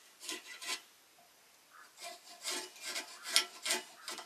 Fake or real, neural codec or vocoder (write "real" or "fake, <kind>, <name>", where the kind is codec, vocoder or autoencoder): real